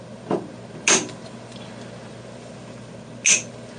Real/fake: real